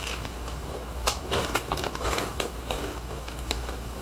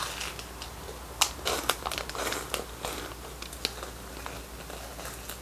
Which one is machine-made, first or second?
first